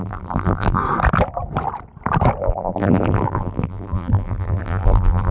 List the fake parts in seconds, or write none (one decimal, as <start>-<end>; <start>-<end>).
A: 0.0-0.8; 2.4-5.3